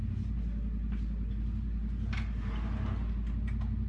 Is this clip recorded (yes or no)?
yes